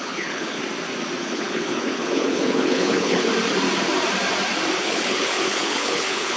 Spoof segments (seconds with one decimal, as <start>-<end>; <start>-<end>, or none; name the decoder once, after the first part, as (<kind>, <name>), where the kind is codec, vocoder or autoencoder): 0.0-0.6 (codec, HILCodec); 1.2-3.3; 4.8-6.4